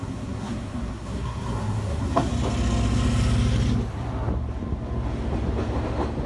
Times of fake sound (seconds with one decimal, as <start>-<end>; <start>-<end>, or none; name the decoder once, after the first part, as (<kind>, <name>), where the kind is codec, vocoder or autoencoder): 0.0-2.3 (codec, SNAC)